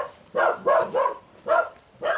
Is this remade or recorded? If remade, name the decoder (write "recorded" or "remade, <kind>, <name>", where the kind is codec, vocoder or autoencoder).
recorded